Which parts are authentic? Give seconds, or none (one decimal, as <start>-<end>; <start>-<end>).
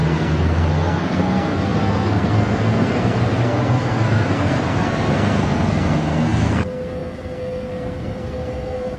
none